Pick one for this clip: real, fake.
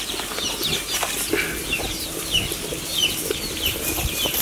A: real